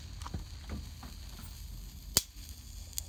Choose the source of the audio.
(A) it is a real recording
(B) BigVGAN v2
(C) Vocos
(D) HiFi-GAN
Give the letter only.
A